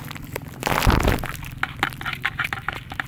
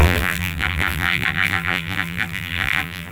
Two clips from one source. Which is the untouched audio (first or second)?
first